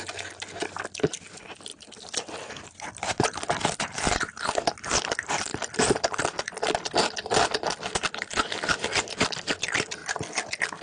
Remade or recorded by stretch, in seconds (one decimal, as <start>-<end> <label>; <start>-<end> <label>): 0.0-10.8 recorded